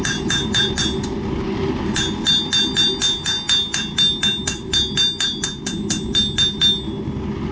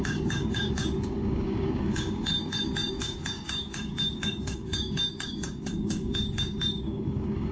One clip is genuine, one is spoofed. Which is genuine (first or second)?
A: first